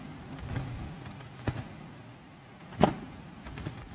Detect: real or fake fake